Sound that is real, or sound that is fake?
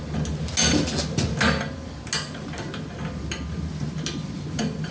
real